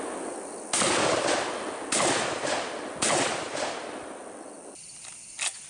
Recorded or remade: recorded